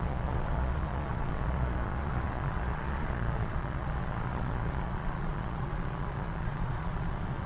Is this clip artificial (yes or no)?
yes